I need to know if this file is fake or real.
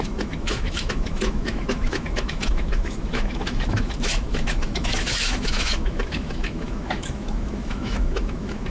fake